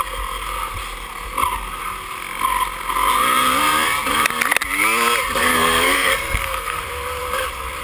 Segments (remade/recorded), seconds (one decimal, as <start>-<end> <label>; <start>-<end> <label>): 0.0-5.4 recorded; 5.4-6.8 remade; 6.8-7.8 recorded

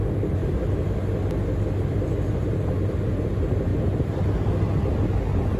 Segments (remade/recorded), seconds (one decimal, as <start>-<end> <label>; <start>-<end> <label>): 0.0-5.6 recorded

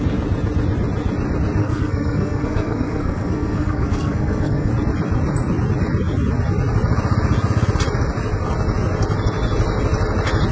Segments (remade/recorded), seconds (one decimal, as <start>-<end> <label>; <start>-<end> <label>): 0.0-1.6 recorded; 1.6-4.7 remade; 4.7-10.5 recorded

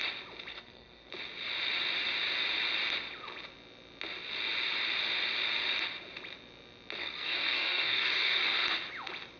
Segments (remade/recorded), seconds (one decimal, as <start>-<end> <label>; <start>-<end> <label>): 0.0-0.5 recorded; 0.5-1.1 remade; 1.1-7.0 recorded; 7.0-8.4 remade; 8.4-9.4 recorded

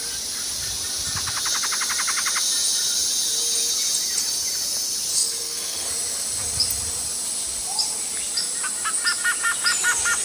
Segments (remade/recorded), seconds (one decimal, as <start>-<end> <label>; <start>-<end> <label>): 0.0-5.1 recorded; 5.1-5.9 remade; 5.9-10.2 recorded